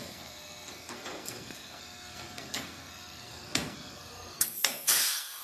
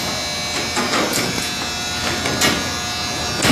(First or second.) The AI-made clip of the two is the first